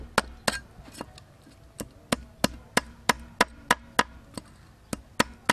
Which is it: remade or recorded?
recorded